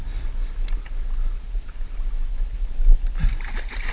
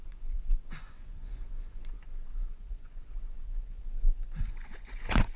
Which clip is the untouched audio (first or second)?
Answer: first